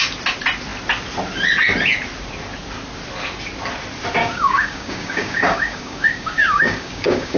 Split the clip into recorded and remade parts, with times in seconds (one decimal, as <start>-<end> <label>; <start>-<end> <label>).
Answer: 0.0-4.2 recorded; 4.2-7.4 remade